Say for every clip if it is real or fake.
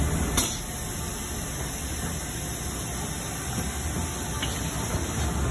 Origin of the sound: real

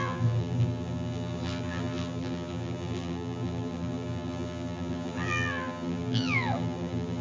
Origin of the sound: fake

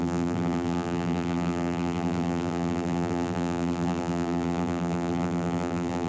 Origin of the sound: fake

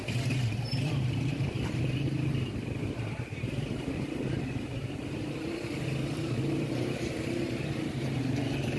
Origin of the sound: fake